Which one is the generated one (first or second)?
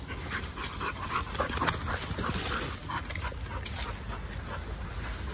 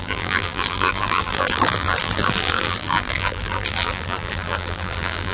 second